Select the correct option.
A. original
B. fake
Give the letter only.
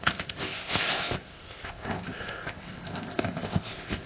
B